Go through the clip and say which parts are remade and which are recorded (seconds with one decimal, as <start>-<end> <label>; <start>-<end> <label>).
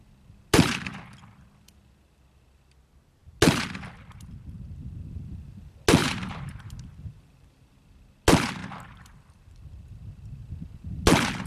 0.0-6.0 recorded; 6.0-7.7 remade; 7.7-11.5 recorded